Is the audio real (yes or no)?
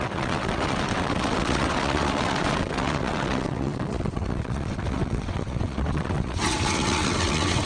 no